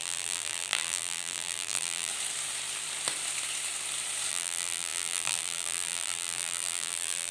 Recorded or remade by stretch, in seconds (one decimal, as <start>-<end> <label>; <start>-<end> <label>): 0.0-2.1 remade; 2.1-4.3 recorded; 4.3-7.3 remade